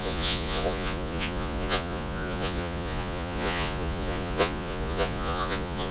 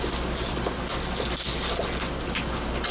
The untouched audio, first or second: second